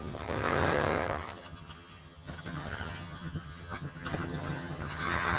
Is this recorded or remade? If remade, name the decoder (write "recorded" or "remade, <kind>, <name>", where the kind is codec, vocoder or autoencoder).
remade, vocoder, HiFi-GAN